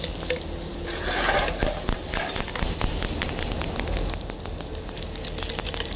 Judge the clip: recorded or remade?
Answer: recorded